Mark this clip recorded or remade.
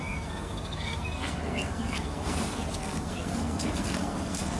remade